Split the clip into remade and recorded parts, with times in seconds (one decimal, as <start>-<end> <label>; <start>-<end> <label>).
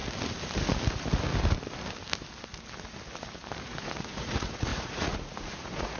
0.0-3.6 recorded; 3.6-6.0 remade